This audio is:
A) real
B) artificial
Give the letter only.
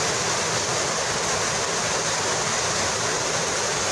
A